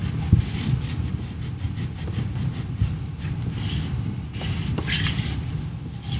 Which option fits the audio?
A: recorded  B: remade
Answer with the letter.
A